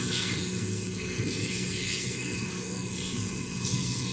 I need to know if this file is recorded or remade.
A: remade